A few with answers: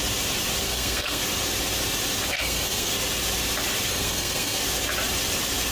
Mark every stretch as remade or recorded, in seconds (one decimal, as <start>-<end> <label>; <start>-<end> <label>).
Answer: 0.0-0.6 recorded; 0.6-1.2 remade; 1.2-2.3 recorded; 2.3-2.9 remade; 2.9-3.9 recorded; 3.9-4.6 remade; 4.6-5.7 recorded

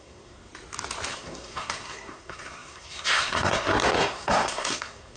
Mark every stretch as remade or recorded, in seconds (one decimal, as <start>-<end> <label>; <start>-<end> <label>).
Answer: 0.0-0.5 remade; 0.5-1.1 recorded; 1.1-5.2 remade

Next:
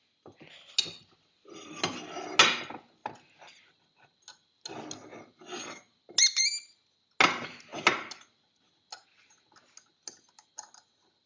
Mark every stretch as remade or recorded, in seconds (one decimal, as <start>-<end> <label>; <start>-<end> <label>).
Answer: 0.0-11.3 recorded

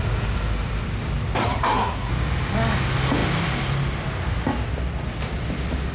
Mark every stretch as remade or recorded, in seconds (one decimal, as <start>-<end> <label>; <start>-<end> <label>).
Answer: 0.0-1.4 recorded; 1.4-2.1 remade; 2.1-5.9 recorded